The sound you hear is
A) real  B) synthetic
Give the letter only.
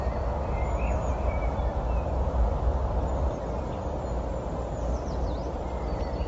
A